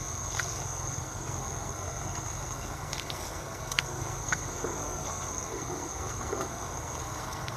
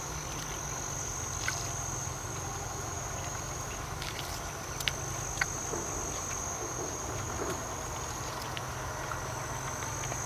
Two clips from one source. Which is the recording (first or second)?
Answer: second